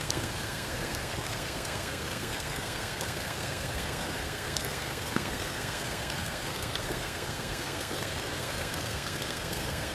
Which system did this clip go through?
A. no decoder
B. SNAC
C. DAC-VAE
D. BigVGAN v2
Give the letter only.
B